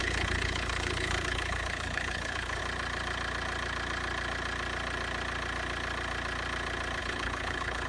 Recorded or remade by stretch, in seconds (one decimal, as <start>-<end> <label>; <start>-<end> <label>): 0.0-2.6 remade; 2.6-7.0 recorded; 7.0-7.9 remade

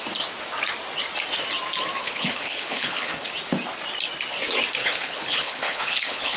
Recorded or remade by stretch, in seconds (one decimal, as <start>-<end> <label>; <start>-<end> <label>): 0.0-2.0 recorded; 2.0-3.3 remade; 3.3-4.8 recorded; 4.8-6.4 remade

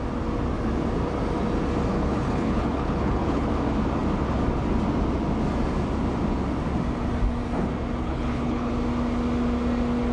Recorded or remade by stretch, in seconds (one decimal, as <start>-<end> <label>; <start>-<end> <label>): 0.0-1.9 recorded; 1.9-3.5 remade; 3.5-8.0 recorded; 8.0-8.7 remade; 8.7-10.1 recorded

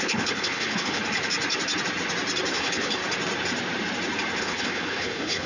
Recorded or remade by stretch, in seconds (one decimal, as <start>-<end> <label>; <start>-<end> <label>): 0.0-1.0 remade; 1.0-2.5 recorded; 2.5-3.0 remade; 3.0-4.4 recorded; 4.4-5.5 remade

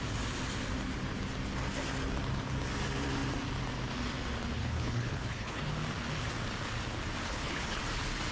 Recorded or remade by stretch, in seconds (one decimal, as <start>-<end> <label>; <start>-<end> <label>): 0.0-4.6 recorded; 4.6-5.6 remade; 5.6-7.2 recorded; 7.2-7.8 remade; 7.8-8.3 recorded

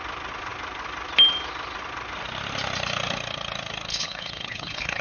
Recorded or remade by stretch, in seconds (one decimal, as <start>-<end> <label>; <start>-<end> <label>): 0.0-3.9 recorded; 3.9-5.0 remade